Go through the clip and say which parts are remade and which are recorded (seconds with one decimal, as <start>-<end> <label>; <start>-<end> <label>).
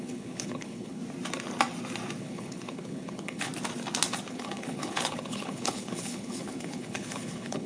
0.0-1.0 remade; 1.0-2.2 recorded; 2.2-3.5 remade; 3.5-4.3 recorded; 4.3-7.7 remade